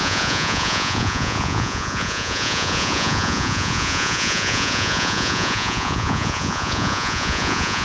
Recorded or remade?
remade